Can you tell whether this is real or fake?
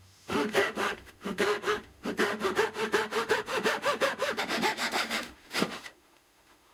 fake